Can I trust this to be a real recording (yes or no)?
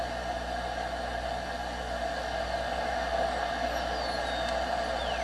yes